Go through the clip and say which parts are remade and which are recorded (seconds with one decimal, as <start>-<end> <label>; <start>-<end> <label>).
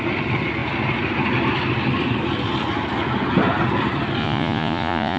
0.0-4.2 recorded; 4.2-5.2 remade